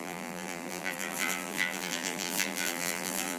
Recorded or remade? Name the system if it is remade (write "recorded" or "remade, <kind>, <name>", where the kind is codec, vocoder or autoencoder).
remade, vocoder, BigVGAN v2